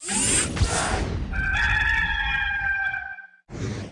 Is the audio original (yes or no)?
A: yes